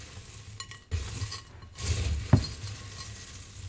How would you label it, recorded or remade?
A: recorded